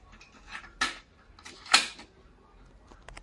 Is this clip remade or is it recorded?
recorded